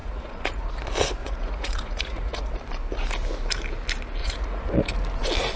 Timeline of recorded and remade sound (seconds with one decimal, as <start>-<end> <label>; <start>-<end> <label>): 0.0-0.7 remade; 0.7-1.2 recorded; 1.2-2.4 remade; 2.4-4.2 recorded; 4.2-4.9 remade; 4.9-5.6 recorded